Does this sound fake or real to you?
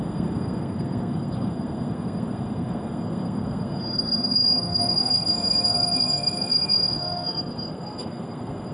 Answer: fake